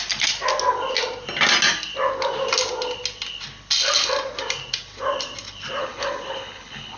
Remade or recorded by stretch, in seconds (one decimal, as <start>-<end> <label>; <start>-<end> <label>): 0.0-5.8 recorded; 5.8-7.0 remade